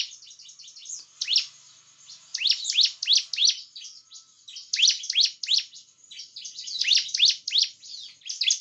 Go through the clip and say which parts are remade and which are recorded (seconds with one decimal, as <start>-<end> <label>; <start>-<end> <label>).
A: 0.0-0.8 recorded; 0.8-1.8 remade; 1.8-8.6 recorded